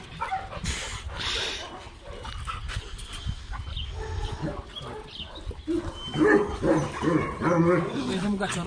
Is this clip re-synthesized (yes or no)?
no